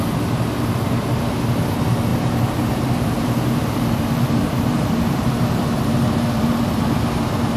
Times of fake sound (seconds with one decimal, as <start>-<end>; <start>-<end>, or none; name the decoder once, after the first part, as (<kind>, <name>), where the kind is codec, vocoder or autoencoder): 2.1-5.9 (vocoder, BigVGAN v2)